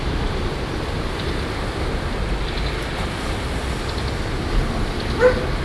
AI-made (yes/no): no